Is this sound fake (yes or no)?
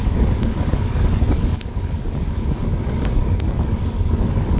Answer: yes